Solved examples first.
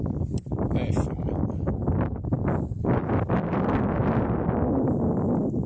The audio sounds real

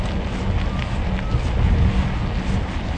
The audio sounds real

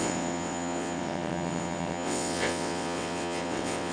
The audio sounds fake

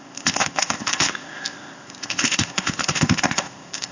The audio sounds fake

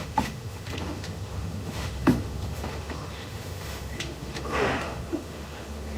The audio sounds fake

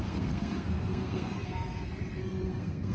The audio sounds fake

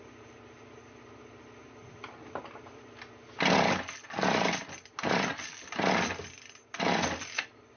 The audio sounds real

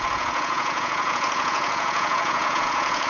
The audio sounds fake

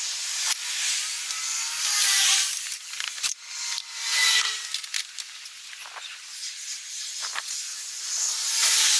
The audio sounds real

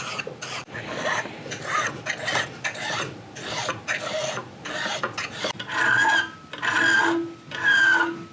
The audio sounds real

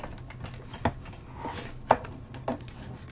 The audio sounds real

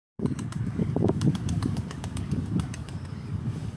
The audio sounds fake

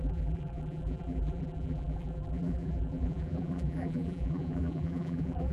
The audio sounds fake